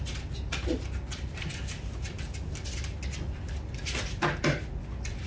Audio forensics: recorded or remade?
recorded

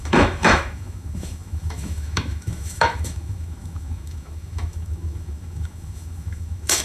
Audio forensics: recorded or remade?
remade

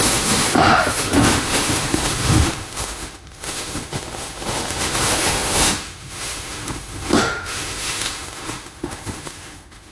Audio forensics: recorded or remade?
remade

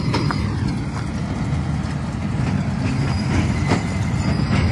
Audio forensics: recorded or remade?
recorded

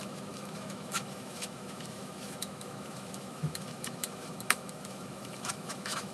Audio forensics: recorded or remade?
remade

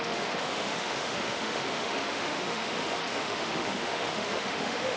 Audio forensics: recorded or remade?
remade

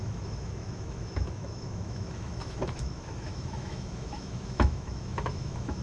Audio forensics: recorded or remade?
remade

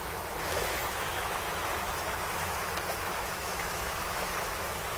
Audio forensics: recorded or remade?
remade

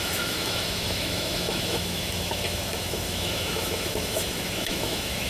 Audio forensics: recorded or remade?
remade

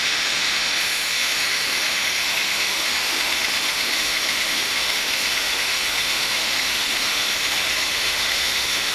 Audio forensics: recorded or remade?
remade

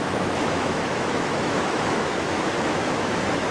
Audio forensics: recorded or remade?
remade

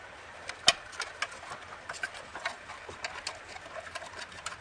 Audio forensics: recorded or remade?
recorded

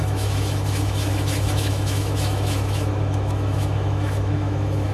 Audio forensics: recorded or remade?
remade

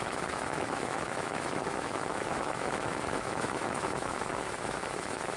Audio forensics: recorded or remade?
remade